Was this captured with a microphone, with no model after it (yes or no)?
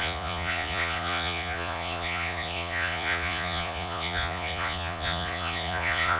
no